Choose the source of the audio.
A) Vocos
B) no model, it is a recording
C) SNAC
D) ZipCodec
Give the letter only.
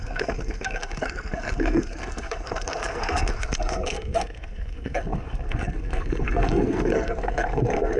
C